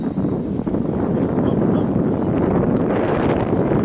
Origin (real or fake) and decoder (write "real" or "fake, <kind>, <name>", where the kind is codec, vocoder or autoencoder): real